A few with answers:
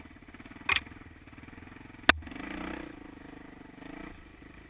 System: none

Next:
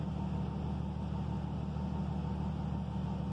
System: none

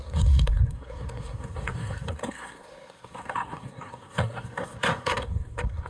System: codec, SNAC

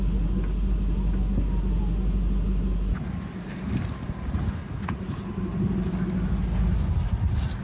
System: none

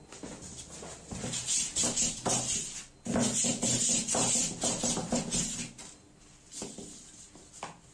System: none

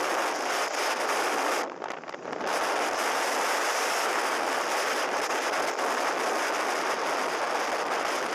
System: none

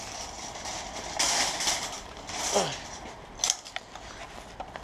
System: none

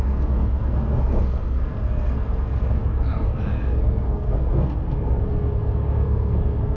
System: codec, SNAC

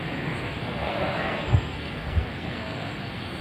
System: codec, SNAC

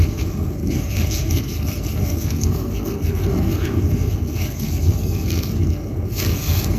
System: codec, SNAC